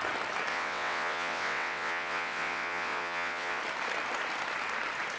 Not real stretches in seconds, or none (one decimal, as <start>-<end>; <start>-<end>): 0.5-3.6